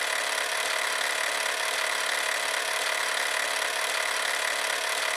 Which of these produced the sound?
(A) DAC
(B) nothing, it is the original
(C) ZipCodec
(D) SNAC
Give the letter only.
B